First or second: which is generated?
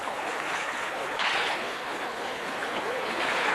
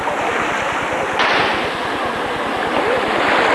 first